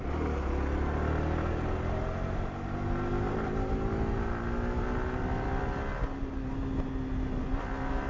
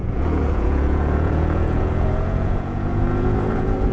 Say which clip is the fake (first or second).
second